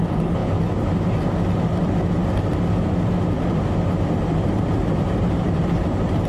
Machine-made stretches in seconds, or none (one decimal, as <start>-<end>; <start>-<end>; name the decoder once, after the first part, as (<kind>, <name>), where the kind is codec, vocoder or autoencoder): 0.0-0.4 (vocoder, BigVGAN v2); 4.2-6.3